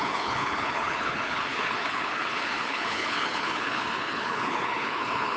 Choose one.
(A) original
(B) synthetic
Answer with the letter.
B